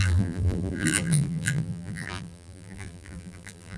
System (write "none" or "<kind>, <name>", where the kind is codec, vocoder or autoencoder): vocoder, BigVGAN v2